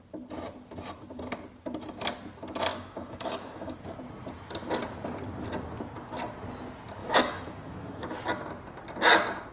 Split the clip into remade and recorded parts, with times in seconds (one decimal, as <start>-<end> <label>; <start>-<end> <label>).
0.0-2.7 recorded; 2.7-3.8 remade; 3.8-7.0 recorded; 7.0-8.1 remade; 8.1-9.5 recorded